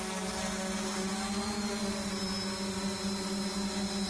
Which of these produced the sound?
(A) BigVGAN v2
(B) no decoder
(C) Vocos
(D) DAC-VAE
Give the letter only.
B